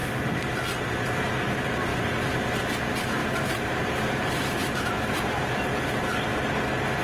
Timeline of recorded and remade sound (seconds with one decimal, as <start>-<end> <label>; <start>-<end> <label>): 0.0-1.9 recorded; 1.9-2.6 remade; 2.6-3.2 recorded; 3.2-5.6 remade; 5.6-7.0 recorded